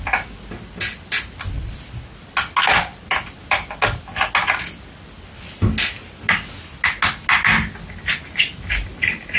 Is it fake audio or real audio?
real